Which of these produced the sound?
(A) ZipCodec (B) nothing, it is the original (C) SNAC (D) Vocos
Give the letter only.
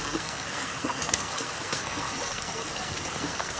C